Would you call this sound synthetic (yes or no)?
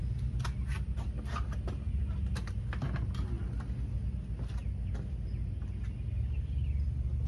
no